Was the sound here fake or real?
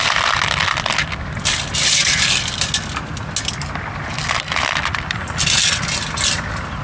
real